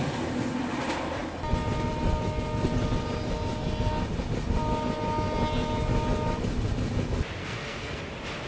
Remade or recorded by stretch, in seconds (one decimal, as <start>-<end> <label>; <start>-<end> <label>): 0.0-7.4 recorded; 7.4-8.0 remade; 8.0-8.5 recorded